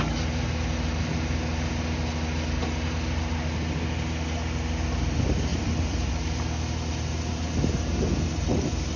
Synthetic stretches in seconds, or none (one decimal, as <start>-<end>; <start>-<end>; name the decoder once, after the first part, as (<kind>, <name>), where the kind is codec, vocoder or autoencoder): 5.5-6.1 (vocoder, BigVGAN v2)